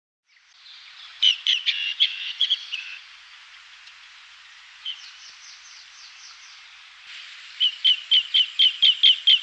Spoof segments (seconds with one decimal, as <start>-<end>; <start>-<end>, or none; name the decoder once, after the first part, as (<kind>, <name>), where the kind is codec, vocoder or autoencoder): 1.1-5.1 (vocoder, Vocos)